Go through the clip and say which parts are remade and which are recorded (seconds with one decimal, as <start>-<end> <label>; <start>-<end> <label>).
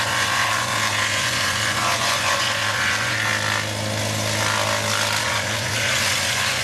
0.0-3.3 remade; 3.3-5.2 recorded; 5.2-6.6 remade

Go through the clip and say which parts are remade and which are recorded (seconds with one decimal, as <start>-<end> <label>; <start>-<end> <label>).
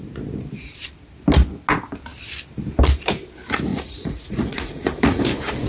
0.0-3.7 recorded; 3.7-5.2 remade; 5.2-5.7 recorded